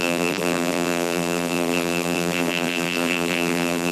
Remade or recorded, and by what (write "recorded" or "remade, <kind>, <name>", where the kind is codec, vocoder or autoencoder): remade, vocoder, BigVGAN v2